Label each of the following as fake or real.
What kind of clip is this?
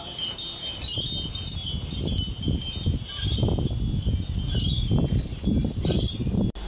real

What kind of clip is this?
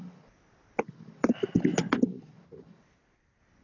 real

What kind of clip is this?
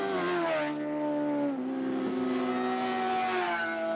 real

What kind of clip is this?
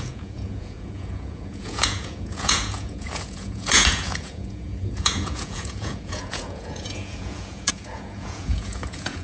fake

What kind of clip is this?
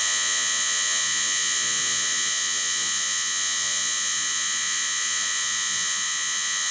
fake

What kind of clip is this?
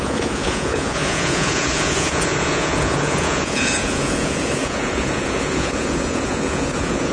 fake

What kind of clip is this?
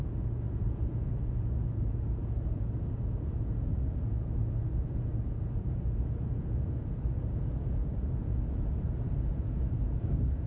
fake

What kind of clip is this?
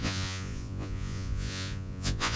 fake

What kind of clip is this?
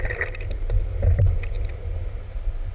real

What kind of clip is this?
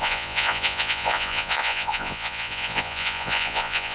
fake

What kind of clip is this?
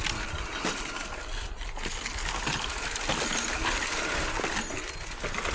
real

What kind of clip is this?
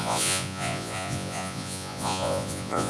fake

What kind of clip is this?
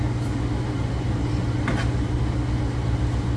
real